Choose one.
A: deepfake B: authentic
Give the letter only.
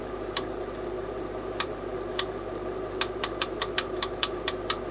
A